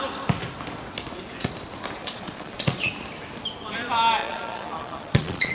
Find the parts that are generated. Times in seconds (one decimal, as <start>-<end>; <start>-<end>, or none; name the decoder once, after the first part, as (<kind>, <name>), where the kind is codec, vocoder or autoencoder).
2.0-2.9 (vocoder, Vocos); 4.2-5.5